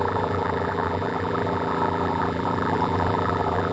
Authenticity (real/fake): fake